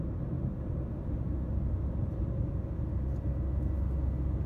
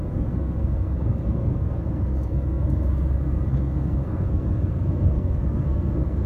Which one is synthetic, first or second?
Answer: second